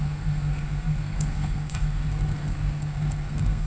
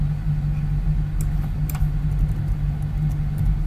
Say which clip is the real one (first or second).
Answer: second